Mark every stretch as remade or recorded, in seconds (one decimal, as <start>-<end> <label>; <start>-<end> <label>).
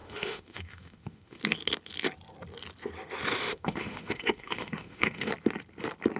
0.0-1.4 remade; 1.4-3.4 recorded; 3.4-5.3 remade; 5.3-6.2 recorded